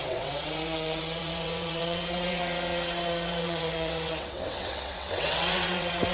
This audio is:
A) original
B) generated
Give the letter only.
B